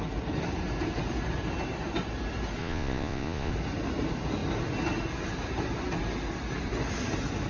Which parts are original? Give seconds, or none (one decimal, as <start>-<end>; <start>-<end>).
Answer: 0.0-2.6; 3.5-7.5